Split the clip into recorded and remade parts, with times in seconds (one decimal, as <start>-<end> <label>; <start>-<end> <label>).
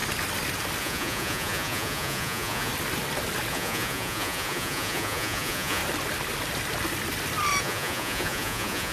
0.0-0.8 recorded; 0.8-2.7 remade; 2.7-3.5 recorded; 3.5-5.8 remade; 5.8-7.6 recorded; 7.6-8.9 remade